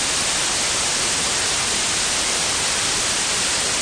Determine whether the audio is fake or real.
real